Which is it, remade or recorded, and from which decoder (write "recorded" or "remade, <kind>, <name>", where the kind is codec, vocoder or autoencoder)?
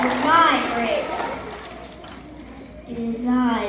recorded